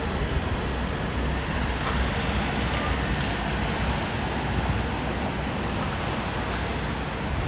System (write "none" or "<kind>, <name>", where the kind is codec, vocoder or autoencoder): none